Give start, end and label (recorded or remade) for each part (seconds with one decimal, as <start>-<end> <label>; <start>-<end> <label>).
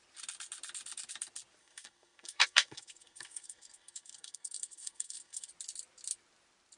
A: 0.0-1.6 recorded; 1.6-5.5 remade; 5.5-6.8 recorded